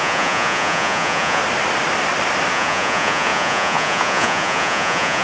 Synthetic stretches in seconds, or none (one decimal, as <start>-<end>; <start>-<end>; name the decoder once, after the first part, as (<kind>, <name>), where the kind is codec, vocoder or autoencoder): 0.0-1.4 (vocoder, Vocos); 2.5-5.2